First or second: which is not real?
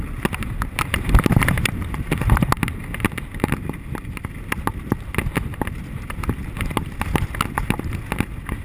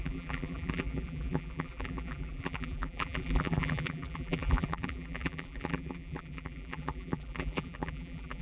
second